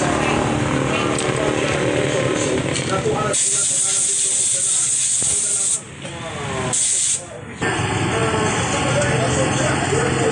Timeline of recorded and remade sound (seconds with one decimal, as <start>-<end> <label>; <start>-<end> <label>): 0.0-10.3 recorded